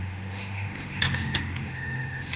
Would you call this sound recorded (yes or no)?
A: no